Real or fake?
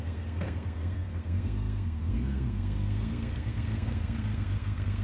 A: fake